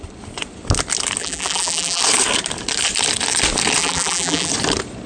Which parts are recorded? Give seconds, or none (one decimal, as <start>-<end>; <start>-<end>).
0.0-1.2; 2.0-3.8; 4.5-5.1